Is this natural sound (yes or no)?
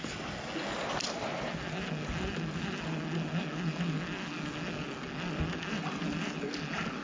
yes